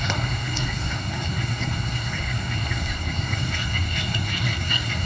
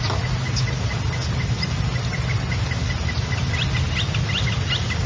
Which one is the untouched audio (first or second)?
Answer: second